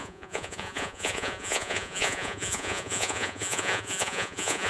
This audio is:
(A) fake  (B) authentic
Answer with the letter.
A